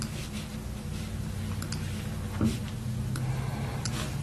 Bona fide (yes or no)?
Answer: yes